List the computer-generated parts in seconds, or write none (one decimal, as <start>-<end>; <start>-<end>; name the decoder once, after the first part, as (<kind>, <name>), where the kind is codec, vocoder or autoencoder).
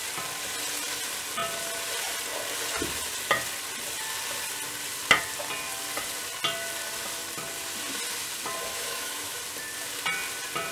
8.7-9.4 (autoencoder, DAC-VAE)